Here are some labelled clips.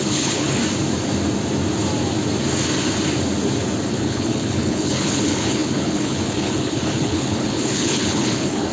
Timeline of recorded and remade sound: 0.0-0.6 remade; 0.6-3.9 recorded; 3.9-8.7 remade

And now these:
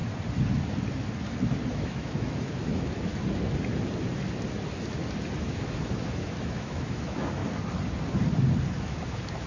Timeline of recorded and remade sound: 0.0-1.7 recorded; 1.7-3.1 remade; 3.1-5.4 recorded; 5.4-7.4 remade; 7.4-8.7 recorded; 8.7-9.5 remade

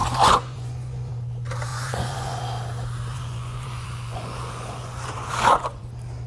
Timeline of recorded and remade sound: 0.0-1.1 remade; 1.1-1.7 recorded; 1.7-2.4 remade; 2.4-3.1 recorded; 3.1-5.8 remade; 5.8-6.3 recorded

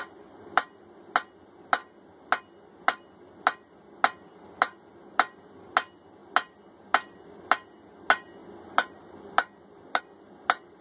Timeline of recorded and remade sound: 0.0-10.8 recorded

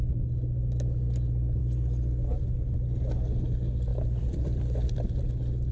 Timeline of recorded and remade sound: 0.0-3.9 recorded; 3.9-5.3 remade; 5.3-5.7 recorded

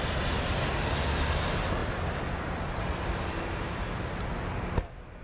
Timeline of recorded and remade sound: 0.0-5.2 recorded